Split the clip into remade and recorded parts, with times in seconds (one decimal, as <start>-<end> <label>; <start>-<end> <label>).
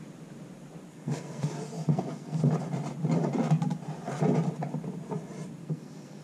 0.0-0.9 recorded; 0.9-1.5 remade; 1.5-1.9 recorded; 1.9-2.4 remade; 2.4-5.6 recorded; 5.6-6.2 remade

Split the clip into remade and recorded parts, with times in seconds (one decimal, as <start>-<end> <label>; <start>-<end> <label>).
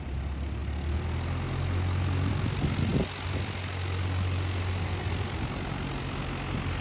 0.0-6.8 recorded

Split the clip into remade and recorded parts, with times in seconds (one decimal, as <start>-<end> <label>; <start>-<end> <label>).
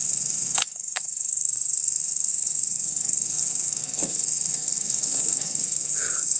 0.0-6.4 remade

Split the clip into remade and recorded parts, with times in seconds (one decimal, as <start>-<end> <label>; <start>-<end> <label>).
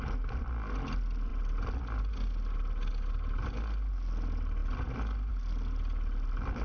0.0-6.6 recorded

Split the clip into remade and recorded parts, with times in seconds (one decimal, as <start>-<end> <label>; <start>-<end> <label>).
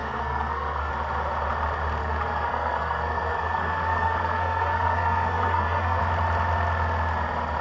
0.0-0.9 remade; 0.9-2.0 recorded; 2.0-6.0 remade; 6.0-7.6 recorded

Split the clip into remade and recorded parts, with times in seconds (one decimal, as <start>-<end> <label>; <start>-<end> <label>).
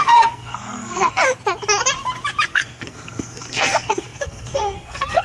0.0-1.2 remade; 1.2-2.5 recorded; 2.5-5.2 remade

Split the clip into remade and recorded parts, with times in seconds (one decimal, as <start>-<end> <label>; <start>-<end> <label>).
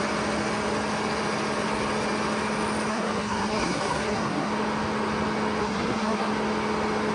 0.0-2.9 recorded; 2.9-4.5 remade; 4.5-5.6 recorded; 5.6-6.3 remade; 6.3-7.1 recorded